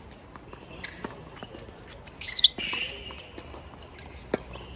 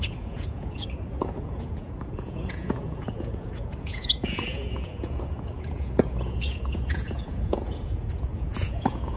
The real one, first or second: first